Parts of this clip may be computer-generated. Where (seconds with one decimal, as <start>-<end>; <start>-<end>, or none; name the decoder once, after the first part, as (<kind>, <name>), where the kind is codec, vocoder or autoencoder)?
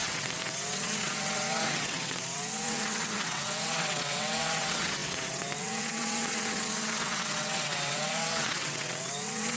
0.0-9.6 (vocoder, WaveNeXt)